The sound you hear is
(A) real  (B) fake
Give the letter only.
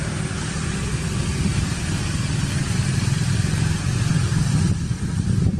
B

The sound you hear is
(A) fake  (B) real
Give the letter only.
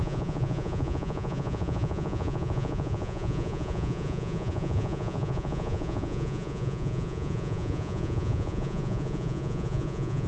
A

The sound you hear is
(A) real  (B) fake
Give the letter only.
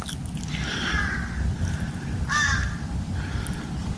A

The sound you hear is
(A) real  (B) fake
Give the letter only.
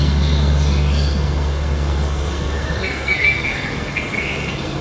B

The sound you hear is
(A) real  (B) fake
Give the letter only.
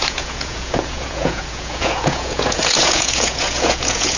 B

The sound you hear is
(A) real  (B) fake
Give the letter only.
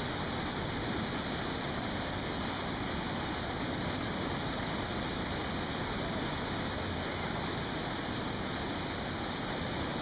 A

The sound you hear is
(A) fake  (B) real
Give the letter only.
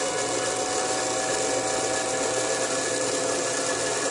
B